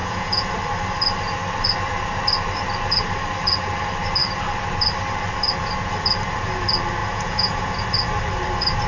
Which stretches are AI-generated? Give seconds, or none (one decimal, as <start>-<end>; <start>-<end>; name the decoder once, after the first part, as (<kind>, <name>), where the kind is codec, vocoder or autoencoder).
0.0-0.5 (vocoder, Vocos); 7.0-7.7